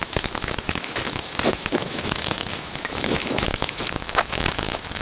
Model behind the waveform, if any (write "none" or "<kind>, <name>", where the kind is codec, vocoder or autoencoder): autoencoder, DAC-VAE